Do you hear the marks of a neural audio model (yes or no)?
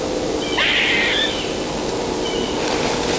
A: no